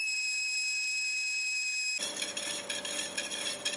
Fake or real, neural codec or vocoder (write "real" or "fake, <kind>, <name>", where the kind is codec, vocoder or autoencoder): real